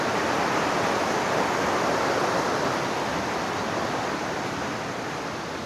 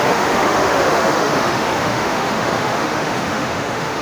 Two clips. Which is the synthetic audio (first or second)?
second